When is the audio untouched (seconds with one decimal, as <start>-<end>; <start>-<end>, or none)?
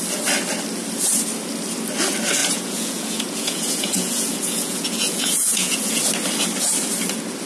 0.0-2.4; 6.0-7.5